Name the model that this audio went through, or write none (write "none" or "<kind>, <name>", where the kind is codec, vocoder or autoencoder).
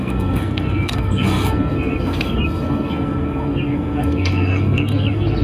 codec, SNAC